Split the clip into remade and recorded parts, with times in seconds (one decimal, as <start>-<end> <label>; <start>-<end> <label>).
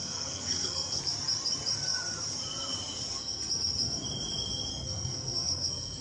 0.0-1.0 remade; 1.0-4.7 recorded; 4.7-6.0 remade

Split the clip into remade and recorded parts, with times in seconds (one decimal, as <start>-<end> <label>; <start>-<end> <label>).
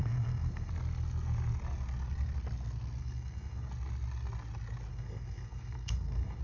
0.0-0.7 remade; 0.7-3.0 recorded; 3.0-3.7 remade; 3.7-4.9 recorded; 4.9-6.4 remade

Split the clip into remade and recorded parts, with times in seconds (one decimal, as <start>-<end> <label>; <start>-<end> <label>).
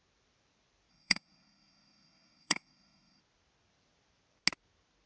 0.0-0.9 recorded; 0.9-3.2 remade; 3.2-5.1 recorded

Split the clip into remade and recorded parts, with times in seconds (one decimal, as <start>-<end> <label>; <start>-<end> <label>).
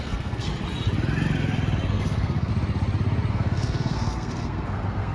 0.0-0.5 remade; 0.5-1.9 recorded; 1.9-2.5 remade; 2.5-3.3 recorded; 3.3-5.1 remade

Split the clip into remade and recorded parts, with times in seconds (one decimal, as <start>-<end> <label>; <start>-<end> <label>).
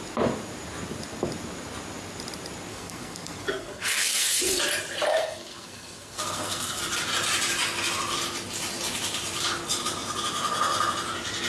0.0-2.7 recorded; 2.7-4.6 remade; 4.6-5.1 recorded; 5.1-6.8 remade; 6.8-11.5 recorded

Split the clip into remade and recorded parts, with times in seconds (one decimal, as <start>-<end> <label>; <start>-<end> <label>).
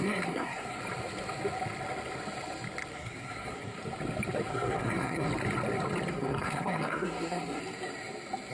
0.0-0.8 remade; 0.8-2.9 recorded; 2.9-3.8 remade; 3.8-4.5 recorded; 4.5-5.3 remade; 5.3-6.1 recorded; 6.1-7.6 remade; 7.6-8.5 recorded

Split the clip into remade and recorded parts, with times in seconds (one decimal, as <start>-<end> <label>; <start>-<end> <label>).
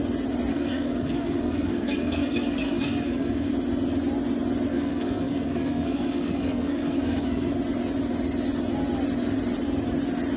0.0-0.5 recorded; 0.5-3.5 remade; 3.5-4.7 recorded; 4.7-7.5 remade; 7.5-10.4 recorded